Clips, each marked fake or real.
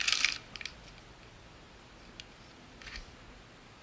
real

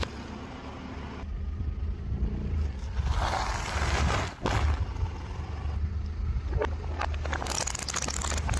real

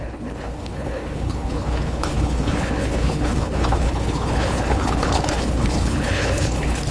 fake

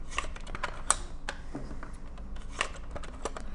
real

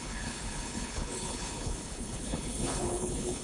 fake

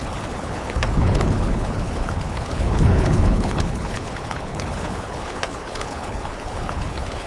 fake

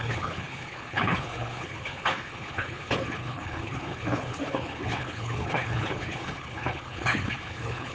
fake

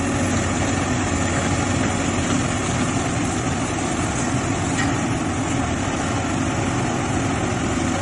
real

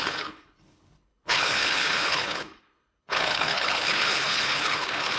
fake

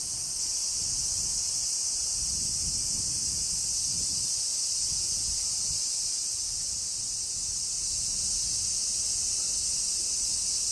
real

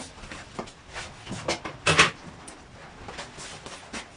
real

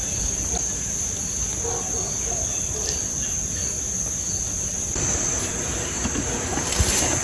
real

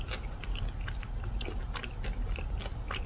real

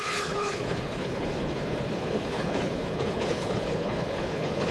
fake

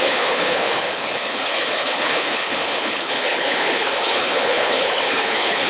fake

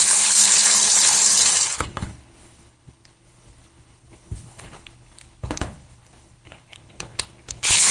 fake